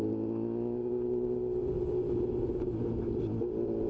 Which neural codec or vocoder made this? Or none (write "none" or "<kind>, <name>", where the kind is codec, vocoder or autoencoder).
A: none